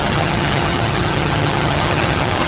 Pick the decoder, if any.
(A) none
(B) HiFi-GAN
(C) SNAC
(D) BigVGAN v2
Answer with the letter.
B